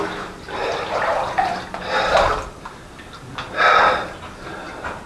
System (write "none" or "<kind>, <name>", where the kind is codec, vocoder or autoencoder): none